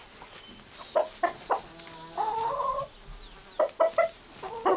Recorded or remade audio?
recorded